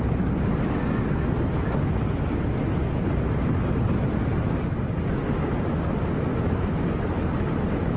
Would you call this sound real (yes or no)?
yes